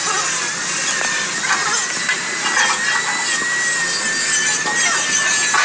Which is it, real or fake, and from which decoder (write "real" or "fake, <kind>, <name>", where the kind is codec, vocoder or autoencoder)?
real